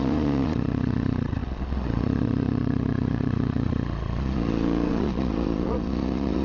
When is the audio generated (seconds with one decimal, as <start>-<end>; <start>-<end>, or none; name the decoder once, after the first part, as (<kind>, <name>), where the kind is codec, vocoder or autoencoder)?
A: 0.0-6.4 (vocoder, Vocos)